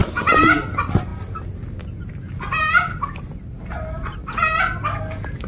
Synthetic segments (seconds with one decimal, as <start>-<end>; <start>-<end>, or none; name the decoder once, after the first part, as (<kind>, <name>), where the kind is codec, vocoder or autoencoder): none